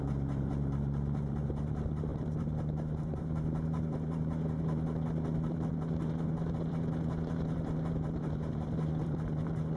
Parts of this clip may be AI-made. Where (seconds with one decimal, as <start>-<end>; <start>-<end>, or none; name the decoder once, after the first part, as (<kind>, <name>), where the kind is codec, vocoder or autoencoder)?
0.0-9.8 (vocoder, BigVGAN v2)